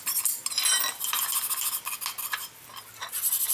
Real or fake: real